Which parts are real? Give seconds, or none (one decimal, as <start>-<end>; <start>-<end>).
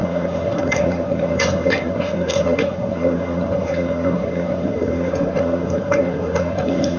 none